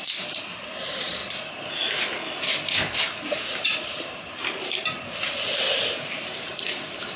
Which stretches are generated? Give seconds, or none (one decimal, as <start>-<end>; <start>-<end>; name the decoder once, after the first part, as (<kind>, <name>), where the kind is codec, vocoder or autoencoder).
0.0-1.2 (vocoder, BigVGAN v2); 2.8-7.2